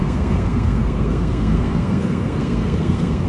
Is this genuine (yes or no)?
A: no